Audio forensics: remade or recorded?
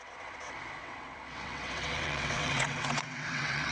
remade